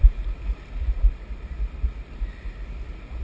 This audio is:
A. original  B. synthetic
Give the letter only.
A